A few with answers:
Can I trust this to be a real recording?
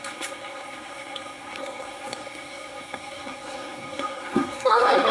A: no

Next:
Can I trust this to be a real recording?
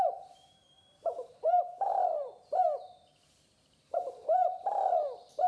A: no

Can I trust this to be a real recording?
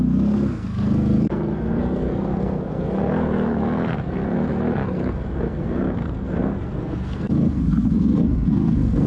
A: no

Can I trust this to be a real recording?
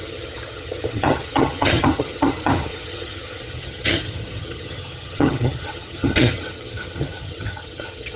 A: no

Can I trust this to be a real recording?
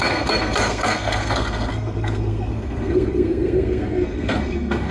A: no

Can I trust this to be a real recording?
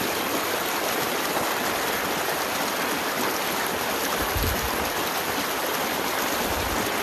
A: yes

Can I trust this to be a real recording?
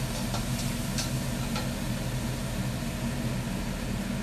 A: yes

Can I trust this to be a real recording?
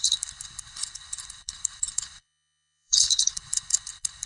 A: no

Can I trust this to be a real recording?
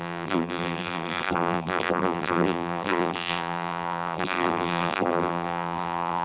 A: no